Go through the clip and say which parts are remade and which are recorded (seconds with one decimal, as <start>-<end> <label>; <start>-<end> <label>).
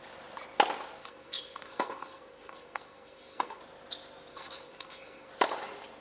0.0-1.0 recorded; 1.0-3.6 remade; 3.6-4.3 recorded; 4.3-5.3 remade; 5.3-6.0 recorded